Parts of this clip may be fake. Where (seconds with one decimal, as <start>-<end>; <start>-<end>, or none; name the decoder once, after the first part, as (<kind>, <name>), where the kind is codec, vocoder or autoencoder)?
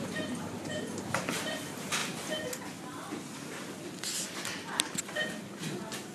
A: 0.0-2.0 (vocoder, BigVGAN v2); 5.0-6.1